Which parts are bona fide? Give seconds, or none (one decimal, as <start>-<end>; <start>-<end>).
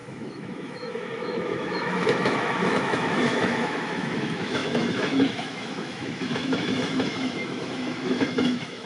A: none